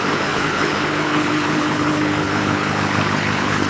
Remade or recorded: remade